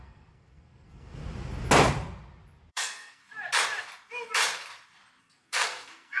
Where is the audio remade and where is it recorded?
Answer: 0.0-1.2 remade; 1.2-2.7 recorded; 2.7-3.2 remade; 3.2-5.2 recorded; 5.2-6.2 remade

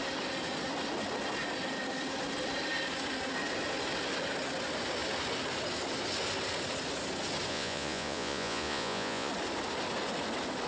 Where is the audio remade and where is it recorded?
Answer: 0.0-7.5 recorded; 7.5-9.3 remade; 9.3-10.7 recorded